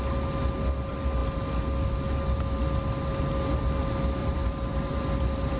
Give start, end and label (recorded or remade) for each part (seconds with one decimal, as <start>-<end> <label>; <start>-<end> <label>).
0.0-4.2 recorded; 4.2-5.6 remade